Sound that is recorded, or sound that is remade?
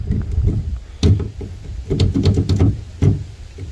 recorded